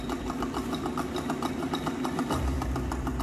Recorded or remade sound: recorded